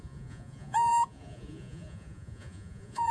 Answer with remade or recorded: remade